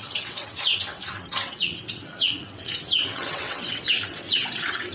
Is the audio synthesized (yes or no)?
yes